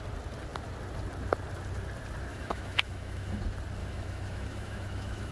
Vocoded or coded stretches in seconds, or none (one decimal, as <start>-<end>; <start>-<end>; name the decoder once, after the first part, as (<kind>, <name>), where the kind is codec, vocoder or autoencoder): 2.3-3.4 (autoencoder, DAC-VAE); 3.8-5.3